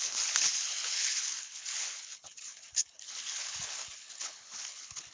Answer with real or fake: fake